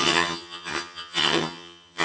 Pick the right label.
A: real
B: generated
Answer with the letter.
B